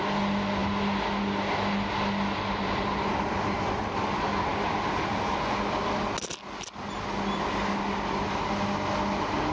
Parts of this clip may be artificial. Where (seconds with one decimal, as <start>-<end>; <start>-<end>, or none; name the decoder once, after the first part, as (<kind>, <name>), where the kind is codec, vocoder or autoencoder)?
none